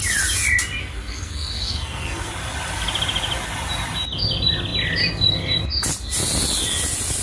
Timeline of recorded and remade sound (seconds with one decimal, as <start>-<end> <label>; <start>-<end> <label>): 0.0-0.8 recorded; 0.8-2.3 remade; 2.3-7.2 recorded